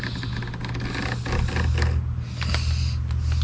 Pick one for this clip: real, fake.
real